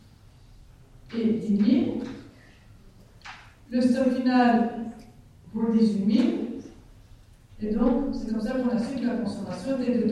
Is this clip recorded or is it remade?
recorded